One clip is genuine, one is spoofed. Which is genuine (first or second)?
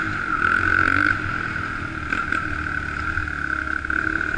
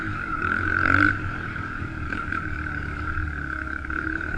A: first